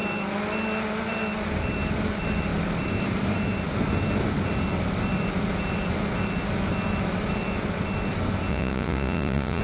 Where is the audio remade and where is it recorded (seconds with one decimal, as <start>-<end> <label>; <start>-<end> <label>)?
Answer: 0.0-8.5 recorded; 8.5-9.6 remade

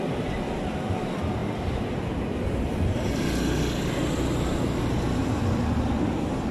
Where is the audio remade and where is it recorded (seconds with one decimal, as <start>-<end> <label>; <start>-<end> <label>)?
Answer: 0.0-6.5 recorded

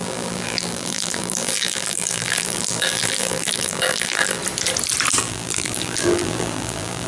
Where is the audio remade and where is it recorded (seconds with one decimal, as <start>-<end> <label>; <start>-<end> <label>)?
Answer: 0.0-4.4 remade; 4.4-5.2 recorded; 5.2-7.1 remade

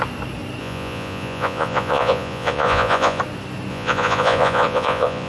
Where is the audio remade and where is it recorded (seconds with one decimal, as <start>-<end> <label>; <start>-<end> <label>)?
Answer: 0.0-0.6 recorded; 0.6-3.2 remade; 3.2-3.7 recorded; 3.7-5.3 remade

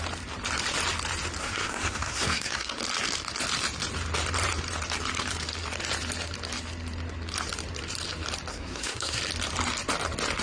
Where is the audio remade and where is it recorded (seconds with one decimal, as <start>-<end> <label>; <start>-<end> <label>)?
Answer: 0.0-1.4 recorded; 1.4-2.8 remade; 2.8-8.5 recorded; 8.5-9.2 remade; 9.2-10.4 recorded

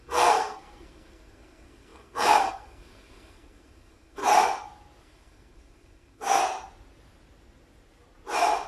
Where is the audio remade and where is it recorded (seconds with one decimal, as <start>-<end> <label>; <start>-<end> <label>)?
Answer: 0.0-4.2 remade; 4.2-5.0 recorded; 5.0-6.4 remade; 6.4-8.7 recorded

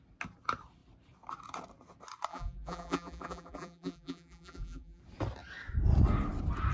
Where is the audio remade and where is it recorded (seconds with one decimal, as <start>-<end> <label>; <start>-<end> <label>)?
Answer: 0.0-2.3 recorded; 2.3-5.0 remade; 5.0-6.7 recorded